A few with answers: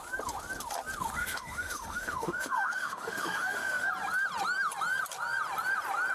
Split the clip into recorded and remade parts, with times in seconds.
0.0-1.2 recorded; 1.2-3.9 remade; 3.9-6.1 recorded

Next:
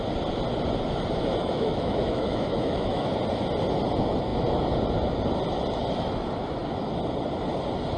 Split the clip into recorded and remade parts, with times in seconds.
0.0-1.4 recorded; 1.4-3.1 remade; 3.1-8.0 recorded